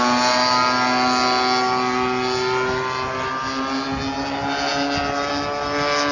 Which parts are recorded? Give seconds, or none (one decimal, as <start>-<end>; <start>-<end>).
0.0-6.1